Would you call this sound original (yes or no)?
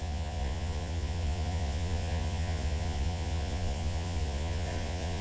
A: no